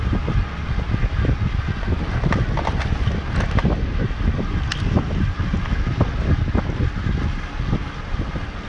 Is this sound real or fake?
real